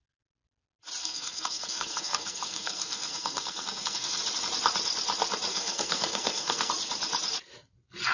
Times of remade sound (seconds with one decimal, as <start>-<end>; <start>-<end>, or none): 1.0-4.2; 5.5-6.7